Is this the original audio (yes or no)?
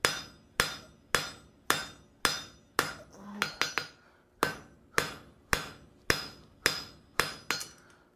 yes